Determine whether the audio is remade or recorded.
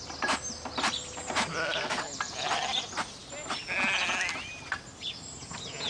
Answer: recorded